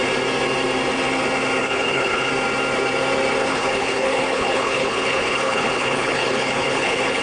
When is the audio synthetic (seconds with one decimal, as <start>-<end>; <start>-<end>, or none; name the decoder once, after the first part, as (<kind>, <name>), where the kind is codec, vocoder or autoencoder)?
1.6-2.3 (codec, HILCodec); 3.4-7.2